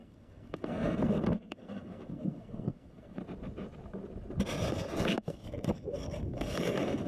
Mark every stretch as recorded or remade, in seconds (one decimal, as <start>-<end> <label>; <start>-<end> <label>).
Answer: 0.0-3.2 remade; 3.2-4.7 recorded; 4.7-7.1 remade